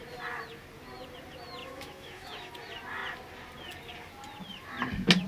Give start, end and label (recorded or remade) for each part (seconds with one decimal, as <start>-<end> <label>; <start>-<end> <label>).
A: 0.0-1.6 recorded; 1.6-2.5 remade; 2.5-5.3 recorded